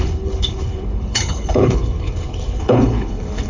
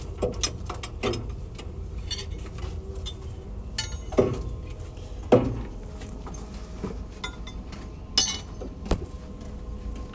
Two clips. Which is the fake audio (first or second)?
first